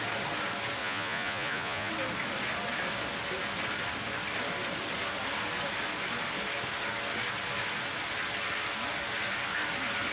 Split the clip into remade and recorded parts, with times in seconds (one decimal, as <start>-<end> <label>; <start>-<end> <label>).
0.0-0.8 recorded; 0.8-1.9 remade; 1.9-10.1 recorded